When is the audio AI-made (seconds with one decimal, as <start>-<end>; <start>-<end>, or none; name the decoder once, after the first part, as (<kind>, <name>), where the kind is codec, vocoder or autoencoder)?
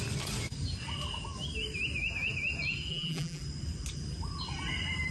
2.9-3.4 (vocoder, BigVGAN v2)